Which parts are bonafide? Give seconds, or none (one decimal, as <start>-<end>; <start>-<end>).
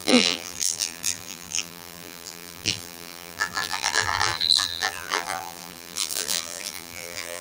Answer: none